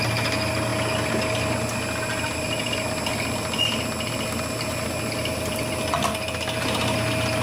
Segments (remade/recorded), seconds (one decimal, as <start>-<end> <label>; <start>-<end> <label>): 0.0-7.4 recorded